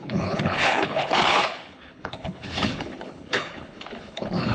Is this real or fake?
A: fake